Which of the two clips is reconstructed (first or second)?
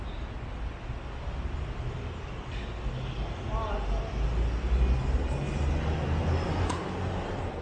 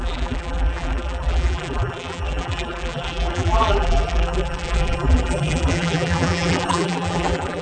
second